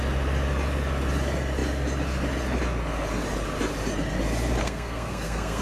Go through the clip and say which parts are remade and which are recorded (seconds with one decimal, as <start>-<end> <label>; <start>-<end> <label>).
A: 0.0-4.6 recorded; 4.6-5.6 remade